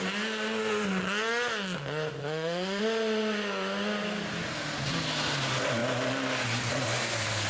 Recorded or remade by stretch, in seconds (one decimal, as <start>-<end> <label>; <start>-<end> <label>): 0.0-2.2 recorded; 2.2-2.8 remade; 2.8-7.5 recorded